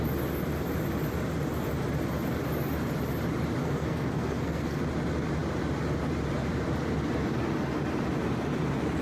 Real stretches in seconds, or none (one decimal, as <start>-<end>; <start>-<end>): 0.0-3.6; 4.8-9.0